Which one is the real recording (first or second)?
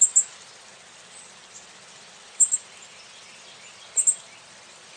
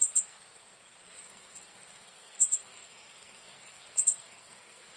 first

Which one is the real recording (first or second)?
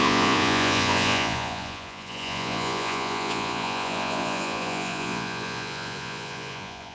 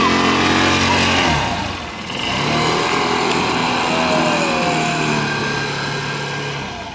second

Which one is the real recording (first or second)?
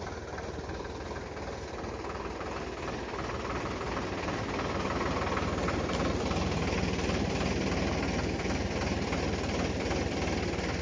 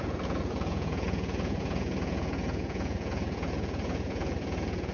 first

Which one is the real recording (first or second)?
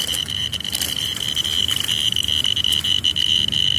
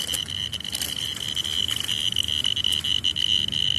second